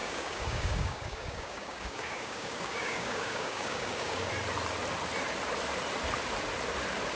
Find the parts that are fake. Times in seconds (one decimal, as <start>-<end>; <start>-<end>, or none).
0.0-4.3